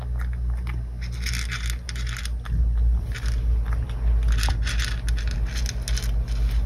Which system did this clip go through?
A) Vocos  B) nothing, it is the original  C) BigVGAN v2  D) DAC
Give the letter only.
B